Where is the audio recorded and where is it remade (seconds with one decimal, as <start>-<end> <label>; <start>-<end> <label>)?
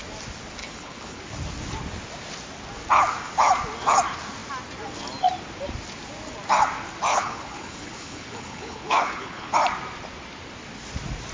0.0-0.6 recorded; 0.6-1.2 remade; 1.2-7.1 recorded; 7.1-9.5 remade; 9.5-11.3 recorded